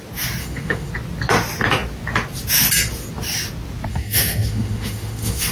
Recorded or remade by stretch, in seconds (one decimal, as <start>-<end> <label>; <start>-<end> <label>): 0.0-0.4 recorded; 0.4-0.9 remade; 0.9-3.9 recorded; 3.9-5.5 remade